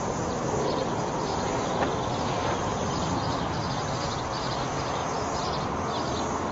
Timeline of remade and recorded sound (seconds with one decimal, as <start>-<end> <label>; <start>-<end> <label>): 0.0-5.0 remade; 5.0-6.5 recorded